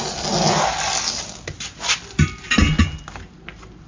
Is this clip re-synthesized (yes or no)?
no